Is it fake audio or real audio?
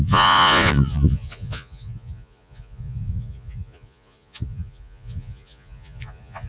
fake